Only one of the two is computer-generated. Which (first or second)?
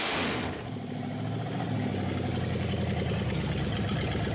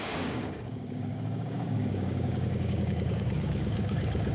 second